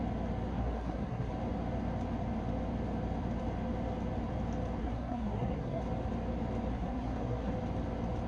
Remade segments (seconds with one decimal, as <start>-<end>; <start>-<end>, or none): 0.5-1.3; 4.8-5.8; 6.7-7.5